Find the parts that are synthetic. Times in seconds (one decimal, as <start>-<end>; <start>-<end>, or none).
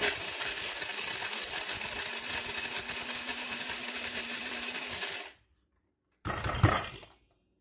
0.0-0.9; 3.2-7.6